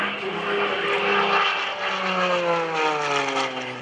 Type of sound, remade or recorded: recorded